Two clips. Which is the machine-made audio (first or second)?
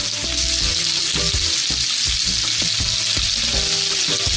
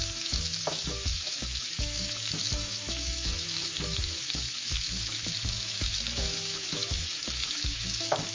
second